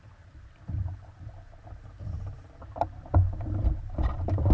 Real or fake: fake